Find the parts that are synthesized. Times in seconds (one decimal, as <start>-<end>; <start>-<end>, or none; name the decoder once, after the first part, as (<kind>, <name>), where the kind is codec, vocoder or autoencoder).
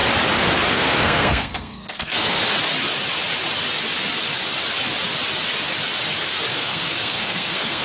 0.7-2.4 (codec, SNAC); 6.5-7.8